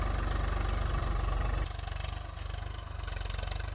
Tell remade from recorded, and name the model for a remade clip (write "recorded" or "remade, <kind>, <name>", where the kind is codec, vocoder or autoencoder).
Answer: recorded